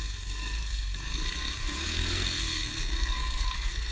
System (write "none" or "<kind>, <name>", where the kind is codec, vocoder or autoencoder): codec, SNAC